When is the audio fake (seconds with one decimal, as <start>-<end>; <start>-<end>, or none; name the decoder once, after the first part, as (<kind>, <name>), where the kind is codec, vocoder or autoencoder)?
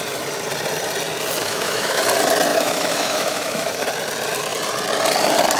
1.4-2.0 (autoencoder, DAC-VAE); 2.5-3.8